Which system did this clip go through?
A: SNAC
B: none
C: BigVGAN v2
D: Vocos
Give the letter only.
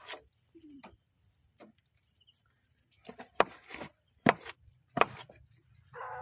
C